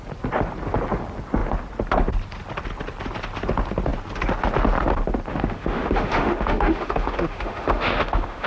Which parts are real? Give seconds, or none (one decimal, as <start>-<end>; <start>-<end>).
0.0-5.3